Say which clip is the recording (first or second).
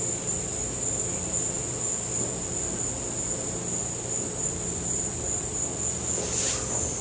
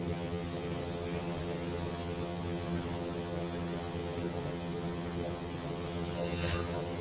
first